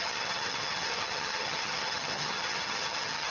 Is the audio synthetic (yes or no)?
yes